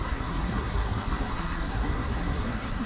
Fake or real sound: fake